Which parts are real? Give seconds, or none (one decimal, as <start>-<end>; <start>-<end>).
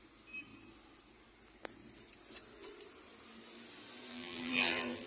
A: 0.0-4.1